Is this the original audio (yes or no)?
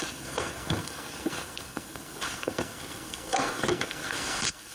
no